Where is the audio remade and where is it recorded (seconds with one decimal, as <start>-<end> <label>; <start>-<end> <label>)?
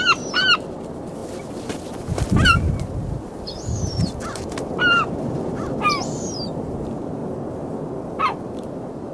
0.0-7.2 remade; 7.2-8.2 recorded; 8.2-9.1 remade